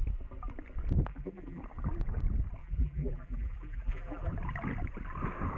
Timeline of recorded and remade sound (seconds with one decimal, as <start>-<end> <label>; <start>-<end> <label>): 0.0-1.1 recorded; 1.1-1.6 remade; 1.6-2.6 recorded; 2.6-4.3 remade; 4.3-5.6 recorded